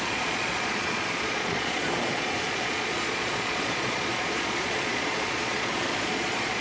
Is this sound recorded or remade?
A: remade